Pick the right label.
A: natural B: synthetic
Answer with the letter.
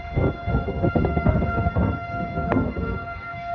B